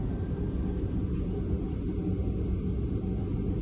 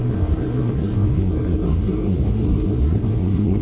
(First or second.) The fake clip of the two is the second